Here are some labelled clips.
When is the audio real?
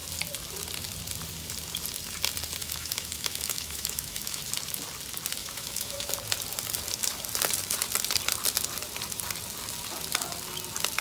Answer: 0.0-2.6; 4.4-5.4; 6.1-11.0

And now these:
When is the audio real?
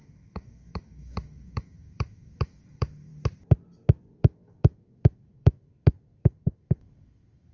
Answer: 3.1-4.1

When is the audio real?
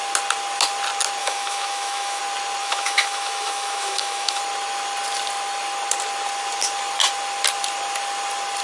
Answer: 0.0-1.2; 2.2-2.6; 4.4-8.6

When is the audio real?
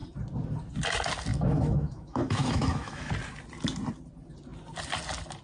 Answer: 0.0-1.3; 3.1-5.4